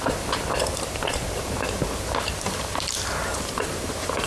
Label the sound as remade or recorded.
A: remade